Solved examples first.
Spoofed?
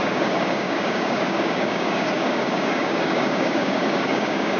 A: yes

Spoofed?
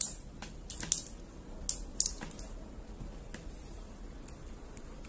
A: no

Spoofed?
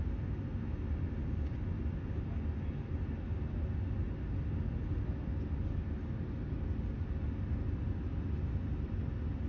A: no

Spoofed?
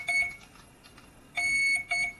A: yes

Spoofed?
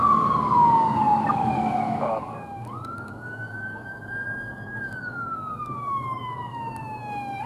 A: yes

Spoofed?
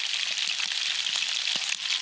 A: no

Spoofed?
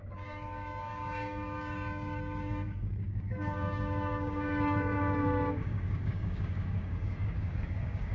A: yes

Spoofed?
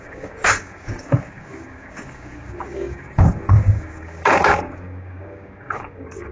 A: yes